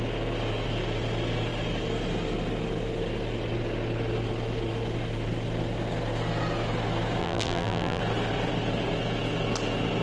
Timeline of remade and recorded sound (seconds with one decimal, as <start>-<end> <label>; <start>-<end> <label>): 0.0-7.2 recorded; 7.2-8.0 remade; 8.0-10.0 recorded